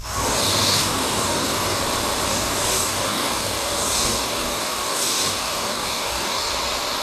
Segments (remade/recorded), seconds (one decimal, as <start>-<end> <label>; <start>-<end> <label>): 0.0-1.8 remade; 1.8-2.3 recorded; 2.3-6.5 remade; 6.5-7.0 recorded